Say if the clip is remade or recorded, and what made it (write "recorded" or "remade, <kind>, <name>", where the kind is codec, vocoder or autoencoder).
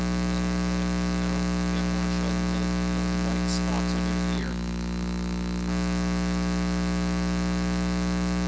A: recorded